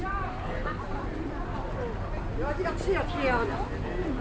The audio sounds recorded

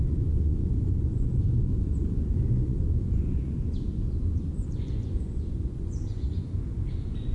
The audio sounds remade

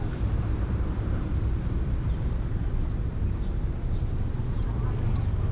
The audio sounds recorded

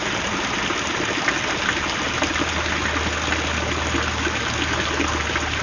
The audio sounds recorded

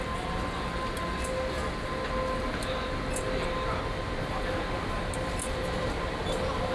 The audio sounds recorded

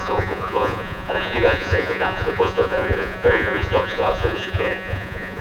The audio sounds remade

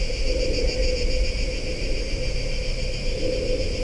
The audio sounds recorded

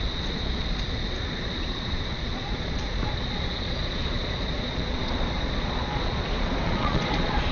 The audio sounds remade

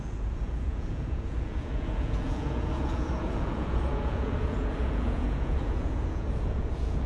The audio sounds remade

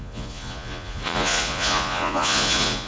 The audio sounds remade